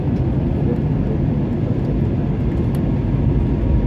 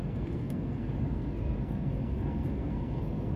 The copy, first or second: second